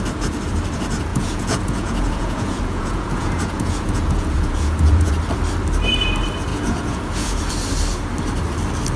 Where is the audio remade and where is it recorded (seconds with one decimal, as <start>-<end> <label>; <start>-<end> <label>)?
0.0-1.1 recorded; 1.1-5.1 remade; 5.1-6.5 recorded; 6.5-7.5 remade; 7.5-9.0 recorded